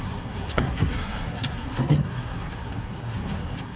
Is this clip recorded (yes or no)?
no